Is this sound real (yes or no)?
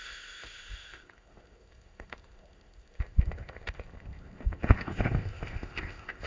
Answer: no